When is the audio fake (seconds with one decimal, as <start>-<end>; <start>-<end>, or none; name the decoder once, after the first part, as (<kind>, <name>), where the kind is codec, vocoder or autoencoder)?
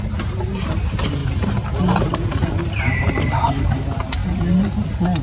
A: 0.0-4.2 (vocoder, BigVGAN v2)